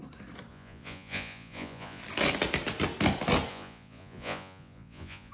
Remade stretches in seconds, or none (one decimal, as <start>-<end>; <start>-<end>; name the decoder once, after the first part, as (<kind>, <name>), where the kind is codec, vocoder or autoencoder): 0.5-2.0 (vocoder, Vocos); 3.5-5.3